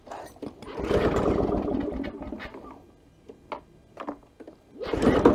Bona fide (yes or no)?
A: yes